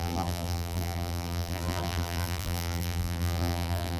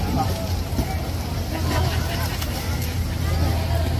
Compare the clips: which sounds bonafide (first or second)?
second